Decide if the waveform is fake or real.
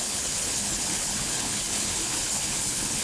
fake